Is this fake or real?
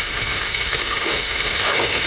fake